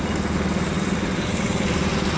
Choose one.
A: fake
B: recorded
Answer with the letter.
B